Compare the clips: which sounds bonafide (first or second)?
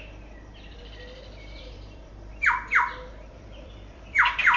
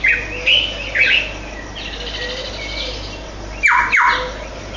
second